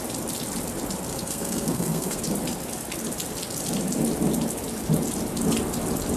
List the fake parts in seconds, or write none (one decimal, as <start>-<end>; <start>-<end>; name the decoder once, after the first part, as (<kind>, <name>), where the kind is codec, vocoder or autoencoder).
1.1-2.2 (codec, SNAC)